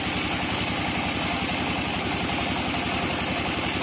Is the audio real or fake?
real